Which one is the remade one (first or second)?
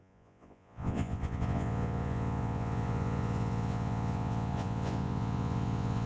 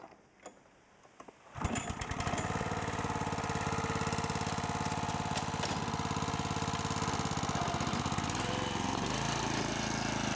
first